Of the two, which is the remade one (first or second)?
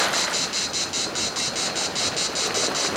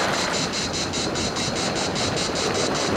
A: second